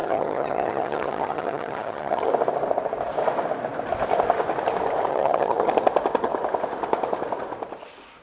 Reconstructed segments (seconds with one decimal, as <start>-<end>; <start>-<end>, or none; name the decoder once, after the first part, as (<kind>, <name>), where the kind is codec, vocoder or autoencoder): 0.0-2.3 (vocoder, HiFi-GAN); 5.1-5.7